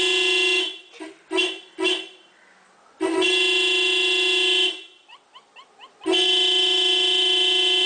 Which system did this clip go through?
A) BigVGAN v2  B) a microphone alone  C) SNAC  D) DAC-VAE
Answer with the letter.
B